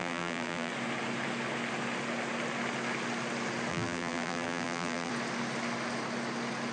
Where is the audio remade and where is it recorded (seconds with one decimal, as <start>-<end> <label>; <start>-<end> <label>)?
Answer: 0.0-0.7 remade; 0.7-3.7 recorded; 3.7-5.1 remade; 5.1-6.7 recorded